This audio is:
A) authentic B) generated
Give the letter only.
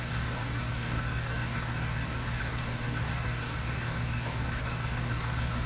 B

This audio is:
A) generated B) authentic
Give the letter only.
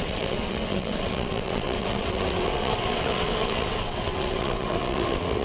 A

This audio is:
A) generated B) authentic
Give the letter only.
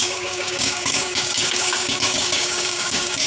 A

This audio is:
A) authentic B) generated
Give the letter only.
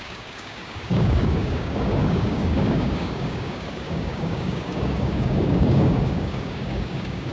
B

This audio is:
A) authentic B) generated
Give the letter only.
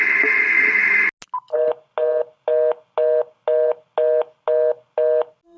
A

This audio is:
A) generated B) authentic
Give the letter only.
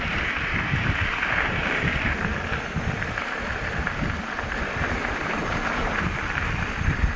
A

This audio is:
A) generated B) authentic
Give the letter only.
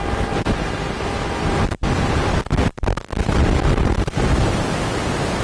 A